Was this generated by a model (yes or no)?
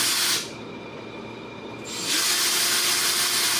no